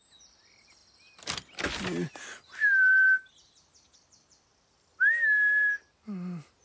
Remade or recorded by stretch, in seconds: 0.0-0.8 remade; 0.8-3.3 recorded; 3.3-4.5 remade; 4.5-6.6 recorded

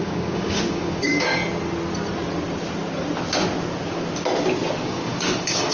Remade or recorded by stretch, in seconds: 0.0-1.4 remade; 1.4-4.8 recorded; 4.8-5.7 remade

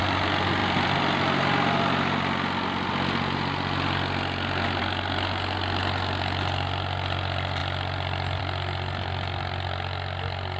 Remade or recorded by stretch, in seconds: 0.0-10.6 recorded

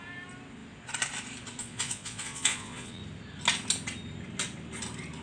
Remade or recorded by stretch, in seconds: 0.0-1.6 recorded; 1.6-3.0 remade; 3.0-5.2 recorded

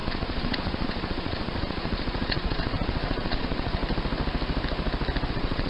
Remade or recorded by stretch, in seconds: 0.0-3.8 remade; 3.8-5.3 recorded; 5.3-5.7 remade

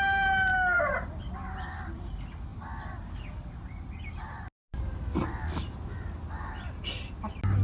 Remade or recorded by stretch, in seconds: 0.0-7.6 recorded

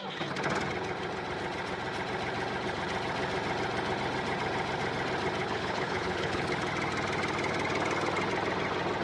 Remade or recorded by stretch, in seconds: 0.0-5.4 recorded; 5.4-6.5 remade; 6.5-9.0 recorded

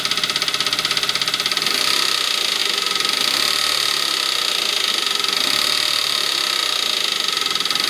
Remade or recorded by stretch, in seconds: 0.0-7.9 recorded